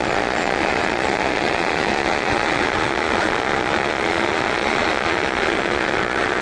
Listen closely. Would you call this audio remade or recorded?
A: remade